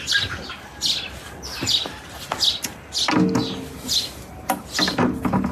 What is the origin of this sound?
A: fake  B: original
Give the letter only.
B